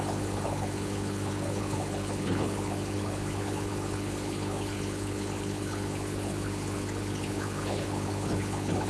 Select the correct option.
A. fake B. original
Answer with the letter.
A